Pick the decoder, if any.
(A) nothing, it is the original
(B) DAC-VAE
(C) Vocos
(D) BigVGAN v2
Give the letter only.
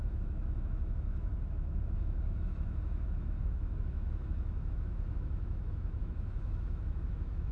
B